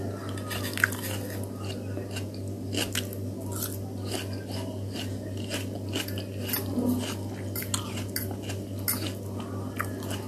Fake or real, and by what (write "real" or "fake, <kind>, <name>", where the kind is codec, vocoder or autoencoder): real